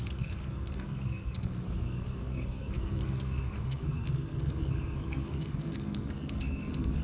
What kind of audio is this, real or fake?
fake